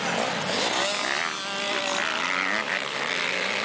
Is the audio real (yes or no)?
yes